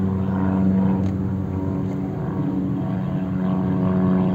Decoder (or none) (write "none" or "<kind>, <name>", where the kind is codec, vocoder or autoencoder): none